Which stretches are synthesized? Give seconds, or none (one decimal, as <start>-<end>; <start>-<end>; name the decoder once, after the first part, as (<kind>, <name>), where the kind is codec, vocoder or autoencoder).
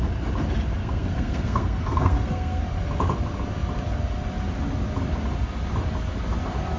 0.8-2.6 (codec, SNAC)